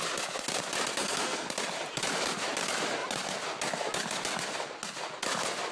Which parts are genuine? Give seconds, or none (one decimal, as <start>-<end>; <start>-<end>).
0.0-1.0; 1.5-5.7